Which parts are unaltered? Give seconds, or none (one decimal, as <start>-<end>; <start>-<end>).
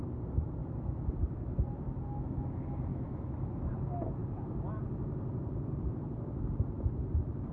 0.0-2.9; 3.7-7.5